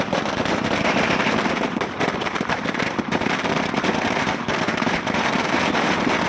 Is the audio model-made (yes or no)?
yes